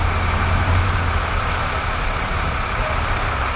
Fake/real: real